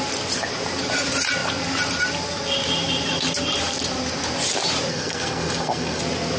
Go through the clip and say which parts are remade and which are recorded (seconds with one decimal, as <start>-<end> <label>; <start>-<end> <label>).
0.0-4.9 recorded; 4.9-6.0 remade; 6.0-6.4 recorded